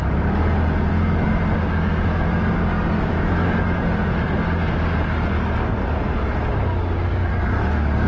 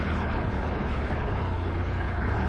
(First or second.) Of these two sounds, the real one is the first